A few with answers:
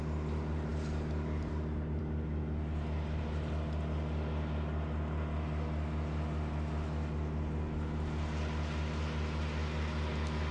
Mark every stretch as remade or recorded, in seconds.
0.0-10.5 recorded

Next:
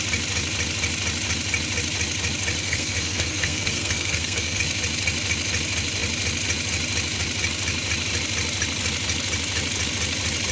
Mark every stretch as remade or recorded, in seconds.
0.0-2.6 recorded; 2.6-4.6 remade; 4.6-10.5 recorded

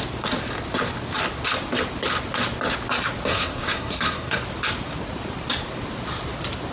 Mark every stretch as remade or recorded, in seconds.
0.0-3.3 recorded; 3.3-4.4 remade; 4.4-6.7 recorded

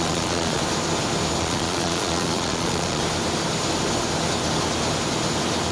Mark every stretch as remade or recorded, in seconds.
0.0-0.6 remade; 0.6-1.4 recorded; 1.4-3.0 remade; 3.0-5.7 recorded